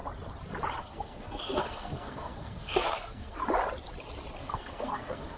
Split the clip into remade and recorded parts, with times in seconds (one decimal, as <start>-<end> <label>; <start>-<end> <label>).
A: 0.0-0.8 recorded; 0.8-3.4 remade; 3.4-4.4 recorded; 4.4-5.4 remade